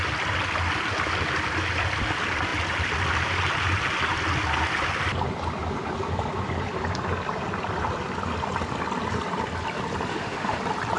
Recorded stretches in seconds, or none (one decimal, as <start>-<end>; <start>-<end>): 0.0-10.1; 10.6-11.0